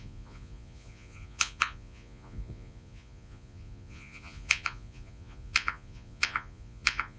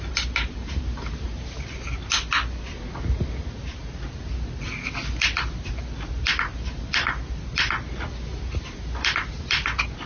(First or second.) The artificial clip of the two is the first